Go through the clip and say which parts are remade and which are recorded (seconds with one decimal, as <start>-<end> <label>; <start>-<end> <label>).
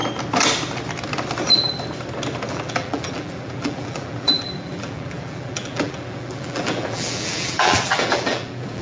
0.0-2.5 recorded; 2.5-8.8 remade